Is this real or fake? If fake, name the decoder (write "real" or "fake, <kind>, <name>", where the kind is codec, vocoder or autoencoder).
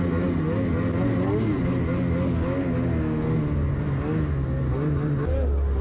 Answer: real